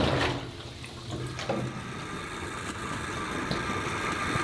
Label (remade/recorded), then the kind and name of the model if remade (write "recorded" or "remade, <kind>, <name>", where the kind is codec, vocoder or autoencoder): recorded